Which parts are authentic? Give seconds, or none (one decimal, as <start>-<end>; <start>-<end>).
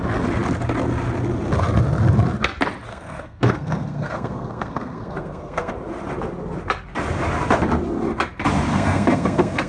0.0-2.9; 5.7-8.7